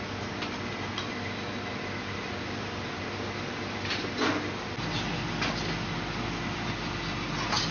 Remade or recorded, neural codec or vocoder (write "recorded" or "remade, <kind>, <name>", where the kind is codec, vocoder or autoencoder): recorded